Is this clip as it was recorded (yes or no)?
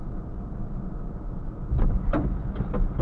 yes